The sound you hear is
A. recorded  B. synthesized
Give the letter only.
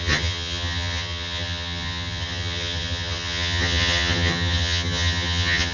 B